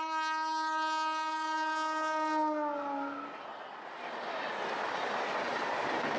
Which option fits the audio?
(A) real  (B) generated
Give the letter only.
A